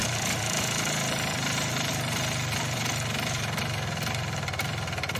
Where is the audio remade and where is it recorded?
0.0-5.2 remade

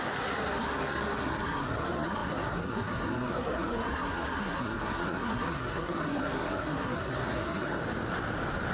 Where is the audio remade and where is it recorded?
0.0-7.8 remade; 7.8-8.7 recorded

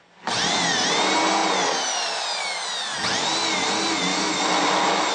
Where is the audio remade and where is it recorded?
0.0-4.1 recorded; 4.1-5.1 remade

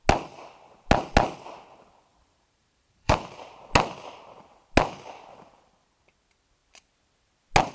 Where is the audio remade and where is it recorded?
0.0-2.1 recorded; 2.1-3.6 remade; 3.6-7.7 recorded

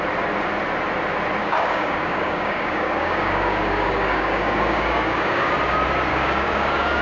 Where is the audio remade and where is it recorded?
0.0-1.4 recorded; 1.4-5.5 remade; 5.5-6.1 recorded; 6.1-7.0 remade

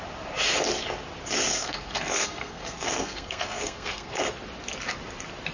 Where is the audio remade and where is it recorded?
0.0-1.5 recorded; 1.5-4.2 remade; 4.2-5.5 recorded

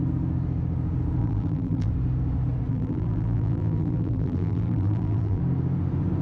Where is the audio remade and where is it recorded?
0.0-1.2 recorded; 1.2-1.9 remade; 1.9-2.7 recorded; 2.7-5.4 remade; 5.4-6.2 recorded

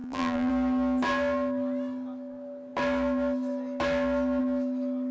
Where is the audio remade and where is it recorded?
0.0-0.5 remade; 0.5-5.1 recorded